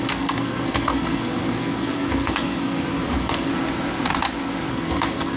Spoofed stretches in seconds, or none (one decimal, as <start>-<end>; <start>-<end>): 0.0-3.5; 4.7-5.4